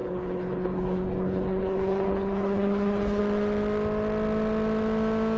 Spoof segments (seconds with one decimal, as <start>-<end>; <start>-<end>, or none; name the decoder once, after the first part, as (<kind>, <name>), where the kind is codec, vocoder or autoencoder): 0.0-3.2 (codec, HILCodec)